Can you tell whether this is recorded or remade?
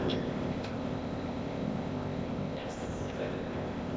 remade